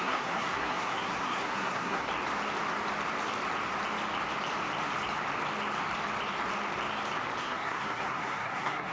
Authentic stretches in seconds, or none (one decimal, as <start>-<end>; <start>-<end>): 2.1-7.4